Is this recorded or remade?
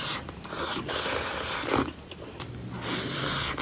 recorded